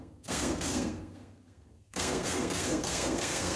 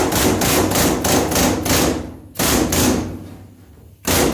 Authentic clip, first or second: second